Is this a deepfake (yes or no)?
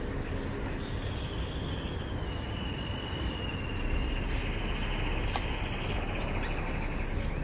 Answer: no